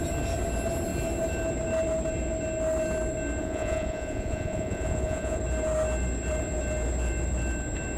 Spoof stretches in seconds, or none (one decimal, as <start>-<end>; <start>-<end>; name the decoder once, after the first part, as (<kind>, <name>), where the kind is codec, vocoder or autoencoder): 3.4-5.4 (vocoder, Vocos)